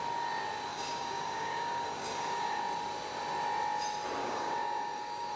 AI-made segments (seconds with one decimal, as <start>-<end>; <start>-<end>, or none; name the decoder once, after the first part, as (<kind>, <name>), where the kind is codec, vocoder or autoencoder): 0.7-2.6 (codec, DAC); 4.2-5.4